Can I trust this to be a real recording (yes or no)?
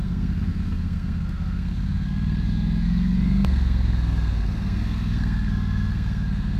no